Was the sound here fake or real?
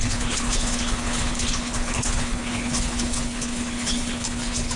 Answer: fake